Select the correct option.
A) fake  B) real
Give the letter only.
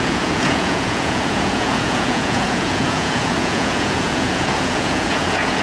A